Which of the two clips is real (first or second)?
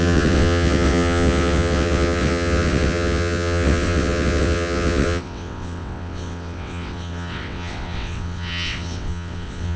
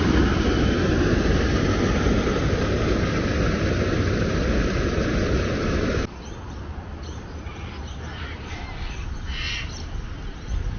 second